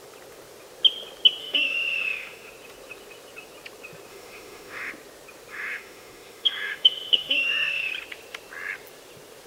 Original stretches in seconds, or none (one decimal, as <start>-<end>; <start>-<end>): 0.0-1.4; 2.5-4.1; 4.9-5.5; 7.9-9.5